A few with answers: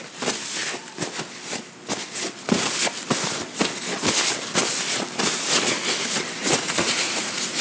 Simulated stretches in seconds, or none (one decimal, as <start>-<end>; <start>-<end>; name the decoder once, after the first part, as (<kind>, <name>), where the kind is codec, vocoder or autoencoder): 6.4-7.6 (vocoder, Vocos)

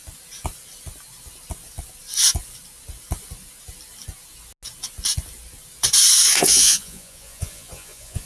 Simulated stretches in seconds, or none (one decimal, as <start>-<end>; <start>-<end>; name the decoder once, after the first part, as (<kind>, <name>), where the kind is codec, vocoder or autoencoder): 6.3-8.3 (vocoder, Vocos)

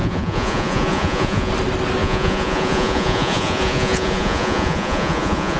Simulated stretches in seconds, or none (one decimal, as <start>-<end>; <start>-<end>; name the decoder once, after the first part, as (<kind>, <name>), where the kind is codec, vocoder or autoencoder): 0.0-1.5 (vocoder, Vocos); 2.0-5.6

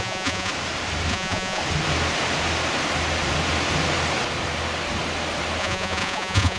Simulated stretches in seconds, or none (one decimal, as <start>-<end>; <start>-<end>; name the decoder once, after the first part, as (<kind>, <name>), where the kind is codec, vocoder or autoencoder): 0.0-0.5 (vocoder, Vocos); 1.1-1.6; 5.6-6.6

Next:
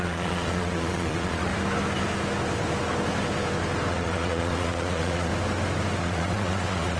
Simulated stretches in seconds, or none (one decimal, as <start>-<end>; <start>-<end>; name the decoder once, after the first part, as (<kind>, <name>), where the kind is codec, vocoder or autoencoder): 0.0-1.5 (vocoder, Vocos); 3.9-5.3; 6.0-7.0

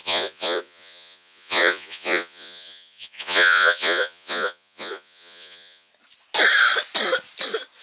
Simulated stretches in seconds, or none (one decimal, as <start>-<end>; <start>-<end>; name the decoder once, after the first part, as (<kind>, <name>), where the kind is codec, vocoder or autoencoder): 0.0-5.9 (vocoder, Vocos)

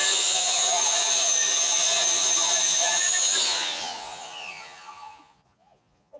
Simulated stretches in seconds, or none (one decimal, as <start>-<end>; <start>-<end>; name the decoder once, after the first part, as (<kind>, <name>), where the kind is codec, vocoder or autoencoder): 0.0-6.2 (vocoder, Vocos)